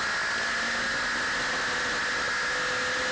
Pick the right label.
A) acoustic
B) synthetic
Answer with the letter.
A